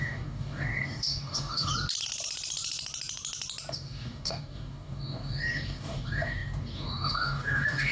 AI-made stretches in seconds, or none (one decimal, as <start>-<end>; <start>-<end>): 0.0-1.7; 3.7-7.9